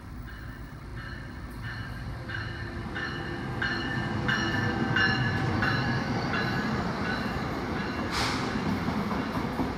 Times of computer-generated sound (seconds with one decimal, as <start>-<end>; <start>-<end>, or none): 0.0-0.9; 5.3-7.8; 8.7-9.8